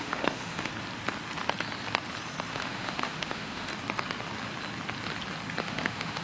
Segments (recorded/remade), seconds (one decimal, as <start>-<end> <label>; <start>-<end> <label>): 0.0-0.7 remade; 0.7-2.5 recorded; 2.5-3.7 remade; 3.7-5.6 recorded; 5.6-6.2 remade